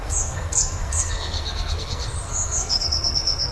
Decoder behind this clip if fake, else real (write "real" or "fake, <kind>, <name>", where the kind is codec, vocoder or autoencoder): fake, codec, SNAC